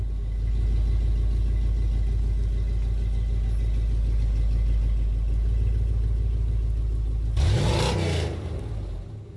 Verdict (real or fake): real